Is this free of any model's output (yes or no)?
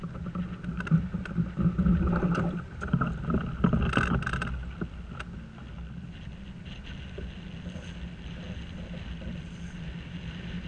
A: yes